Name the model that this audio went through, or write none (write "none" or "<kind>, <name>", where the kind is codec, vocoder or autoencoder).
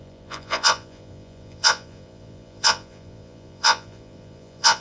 vocoder, Vocos